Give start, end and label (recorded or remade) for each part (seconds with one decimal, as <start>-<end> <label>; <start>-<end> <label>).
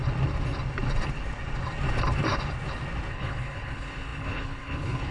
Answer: 0.0-3.1 recorded; 3.1-5.1 remade